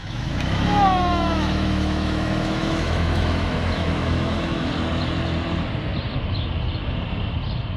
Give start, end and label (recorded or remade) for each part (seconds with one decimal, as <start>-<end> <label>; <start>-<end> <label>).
0.0-4.7 remade; 4.7-7.8 recorded